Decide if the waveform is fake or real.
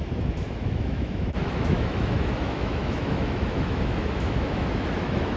fake